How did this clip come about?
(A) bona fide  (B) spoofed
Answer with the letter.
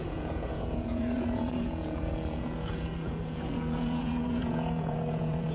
B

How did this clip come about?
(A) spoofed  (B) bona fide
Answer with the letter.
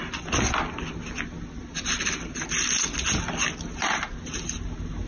B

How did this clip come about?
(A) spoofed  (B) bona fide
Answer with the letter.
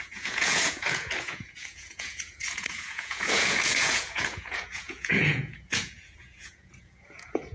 A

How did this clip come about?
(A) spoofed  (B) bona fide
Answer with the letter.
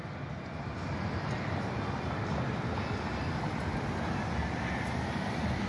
B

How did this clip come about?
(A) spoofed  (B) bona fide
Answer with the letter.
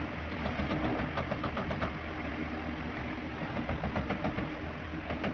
B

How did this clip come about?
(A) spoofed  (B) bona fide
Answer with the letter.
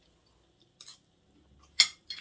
B